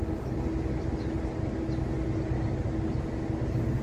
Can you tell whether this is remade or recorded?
recorded